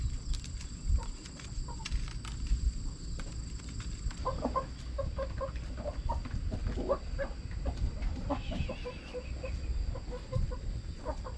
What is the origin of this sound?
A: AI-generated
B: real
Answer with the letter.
B